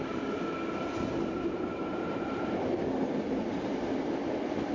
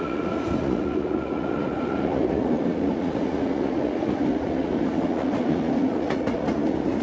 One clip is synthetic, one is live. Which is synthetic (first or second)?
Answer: second